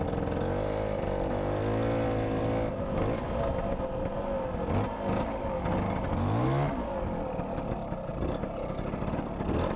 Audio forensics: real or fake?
real